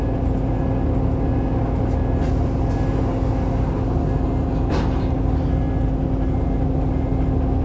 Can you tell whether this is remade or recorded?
recorded